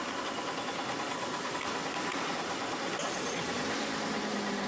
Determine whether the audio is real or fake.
real